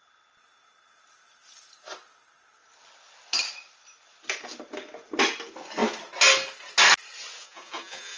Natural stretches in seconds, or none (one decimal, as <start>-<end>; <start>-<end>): 0.0-7.4